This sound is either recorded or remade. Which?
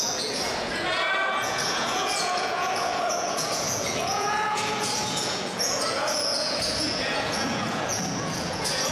remade